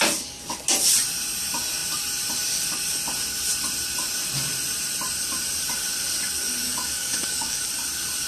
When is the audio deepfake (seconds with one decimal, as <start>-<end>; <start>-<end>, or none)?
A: 6.6-7.6